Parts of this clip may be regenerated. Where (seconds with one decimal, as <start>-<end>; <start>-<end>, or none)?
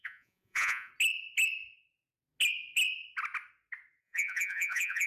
0.0-0.9; 4.0-5.1